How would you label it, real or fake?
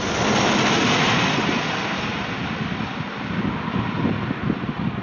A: real